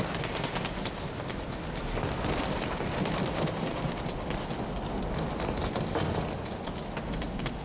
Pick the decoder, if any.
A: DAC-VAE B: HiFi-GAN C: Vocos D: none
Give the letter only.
D